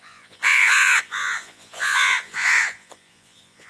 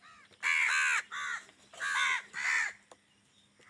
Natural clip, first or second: second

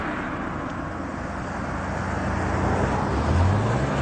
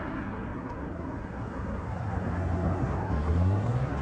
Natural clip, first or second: first